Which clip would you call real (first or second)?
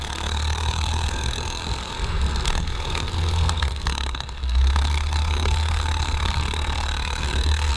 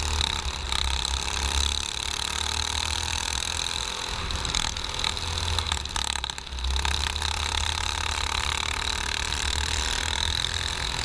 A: second